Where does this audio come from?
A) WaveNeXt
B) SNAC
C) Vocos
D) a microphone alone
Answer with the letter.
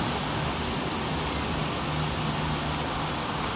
D